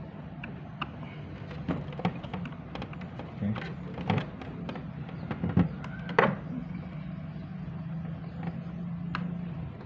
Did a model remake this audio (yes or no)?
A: no